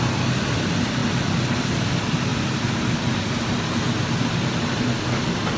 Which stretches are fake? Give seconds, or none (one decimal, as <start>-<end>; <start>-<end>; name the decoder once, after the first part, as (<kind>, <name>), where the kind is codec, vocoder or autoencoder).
none